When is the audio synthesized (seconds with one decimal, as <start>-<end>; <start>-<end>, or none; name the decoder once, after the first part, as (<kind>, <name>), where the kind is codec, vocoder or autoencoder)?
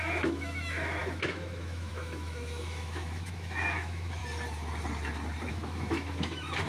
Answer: 0.0-4.2 (autoencoder, DAC-VAE); 5.5-6.7